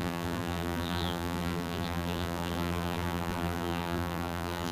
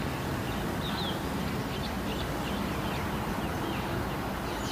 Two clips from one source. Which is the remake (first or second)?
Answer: first